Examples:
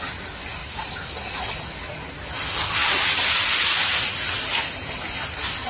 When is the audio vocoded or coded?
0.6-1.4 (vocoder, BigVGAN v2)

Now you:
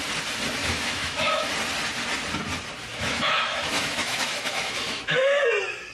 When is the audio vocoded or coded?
0.6-1.5 (autoencoder, DAC-VAE); 2.9-5.4

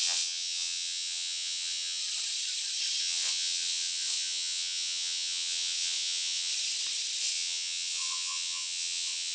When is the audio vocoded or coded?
0.0-2.0 (vocoder, WaveNeXt); 3.0-6.5; 7.2-9.3

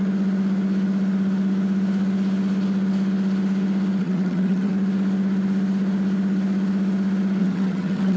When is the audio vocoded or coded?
4.0-4.7 (vocoder, HiFi-GAN); 7.4-8.2

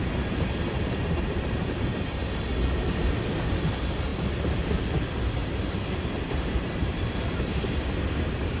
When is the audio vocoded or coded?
0.0-1.6 (vocoder, BigVGAN v2); 5.4-7.5

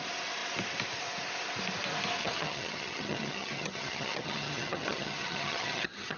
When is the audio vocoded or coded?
2.2-6.2 (vocoder, HiFi-GAN)

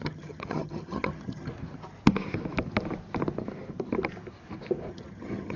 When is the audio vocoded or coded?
0.0-1.5 (vocoder, HiFi-GAN); 4.9-5.6